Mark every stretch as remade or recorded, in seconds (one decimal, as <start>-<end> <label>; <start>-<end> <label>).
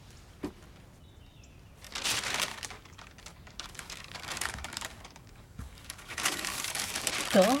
0.0-2.5 recorded; 2.5-7.1 remade; 7.1-7.6 recorded